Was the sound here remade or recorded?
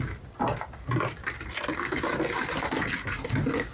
recorded